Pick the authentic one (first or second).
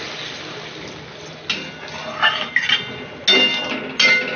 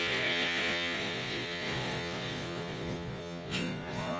first